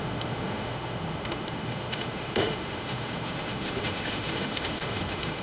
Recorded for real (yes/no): no